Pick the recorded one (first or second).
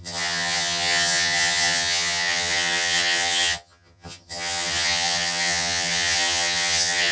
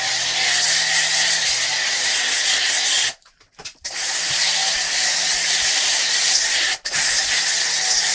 second